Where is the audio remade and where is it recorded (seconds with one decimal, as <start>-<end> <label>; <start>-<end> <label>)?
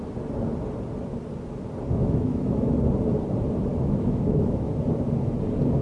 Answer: 0.0-2.0 recorded; 2.0-2.7 remade; 2.7-3.7 recorded; 3.7-4.7 remade; 4.7-5.8 recorded